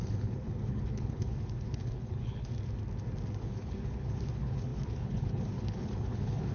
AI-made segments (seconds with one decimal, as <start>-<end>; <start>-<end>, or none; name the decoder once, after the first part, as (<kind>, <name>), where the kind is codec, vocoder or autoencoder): 0.0-2.5 (codec, HILCodec); 3.4-6.5